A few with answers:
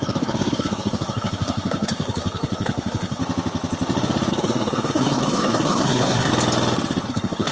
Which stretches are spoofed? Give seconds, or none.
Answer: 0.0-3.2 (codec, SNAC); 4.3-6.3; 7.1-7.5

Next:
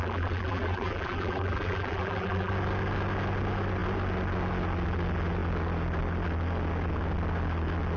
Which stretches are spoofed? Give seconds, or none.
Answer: 0.0-2.5 (vocoder, BigVGAN v2)

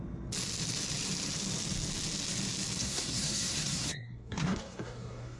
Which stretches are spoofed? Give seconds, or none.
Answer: 2.8-5.4 (codec, SNAC)